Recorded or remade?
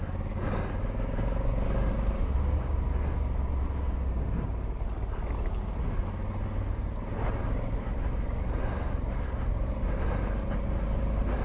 recorded